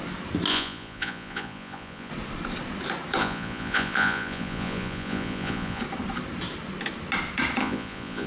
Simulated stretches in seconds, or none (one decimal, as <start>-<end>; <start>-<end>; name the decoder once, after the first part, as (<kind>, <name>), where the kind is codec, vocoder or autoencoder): 0.5-2.1 (vocoder, Vocos); 3.2-5.8; 7.6-8.3